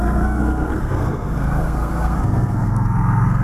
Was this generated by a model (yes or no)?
yes